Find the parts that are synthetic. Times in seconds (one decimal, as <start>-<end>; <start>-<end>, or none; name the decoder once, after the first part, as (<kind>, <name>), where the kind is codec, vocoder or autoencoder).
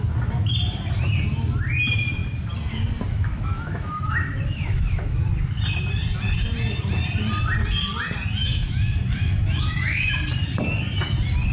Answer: 3.1-5.2 (autoencoder, DAC-VAE); 8.4-10.1